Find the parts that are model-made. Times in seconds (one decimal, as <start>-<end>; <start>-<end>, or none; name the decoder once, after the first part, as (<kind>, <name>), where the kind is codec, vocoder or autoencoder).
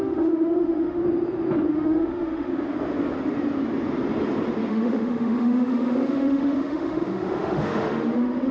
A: 0.0-1.0 (autoencoder, DAC-VAE); 1.7-2.5; 4.7-8.5